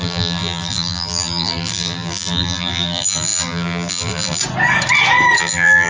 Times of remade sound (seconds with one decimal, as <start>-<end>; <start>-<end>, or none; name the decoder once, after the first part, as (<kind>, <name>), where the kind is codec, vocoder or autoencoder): 0.0-4.4 (vocoder, BigVGAN v2); 5.4-5.9